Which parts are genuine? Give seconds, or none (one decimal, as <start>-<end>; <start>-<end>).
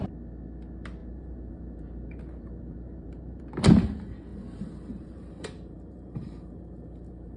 0.0-1.0; 3.4-4.3